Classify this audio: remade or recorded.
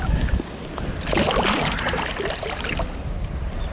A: recorded